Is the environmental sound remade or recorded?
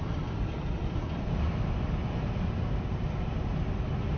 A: recorded